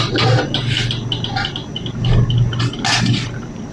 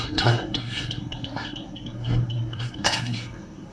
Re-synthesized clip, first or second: second